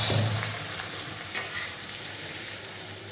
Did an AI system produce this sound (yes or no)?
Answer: yes